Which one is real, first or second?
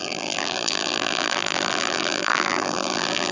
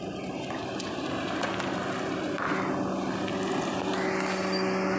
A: second